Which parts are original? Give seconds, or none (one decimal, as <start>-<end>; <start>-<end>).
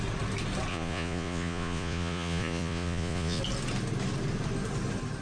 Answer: 0.0-0.7; 3.4-5.2